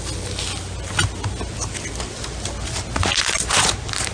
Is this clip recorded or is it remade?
recorded